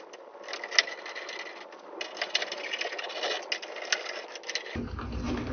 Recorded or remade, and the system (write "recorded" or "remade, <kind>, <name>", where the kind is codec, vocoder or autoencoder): recorded